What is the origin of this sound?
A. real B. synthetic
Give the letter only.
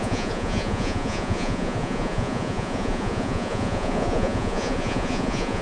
B